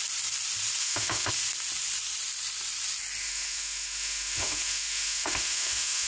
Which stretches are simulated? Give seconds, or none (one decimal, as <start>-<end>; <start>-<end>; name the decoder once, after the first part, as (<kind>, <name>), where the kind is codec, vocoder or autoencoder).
0.8-1.3 (autoencoder, DAC-VAE); 3.2-6.1